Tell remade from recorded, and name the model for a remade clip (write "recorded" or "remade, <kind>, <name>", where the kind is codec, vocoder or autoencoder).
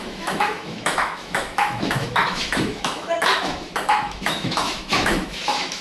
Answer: remade, autoencoder, DAC-VAE